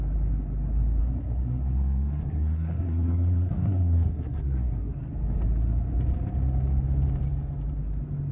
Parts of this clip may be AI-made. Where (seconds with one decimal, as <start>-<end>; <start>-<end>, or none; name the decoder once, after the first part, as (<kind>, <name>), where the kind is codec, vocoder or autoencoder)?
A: 1.0-4.9 (codec, SNAC)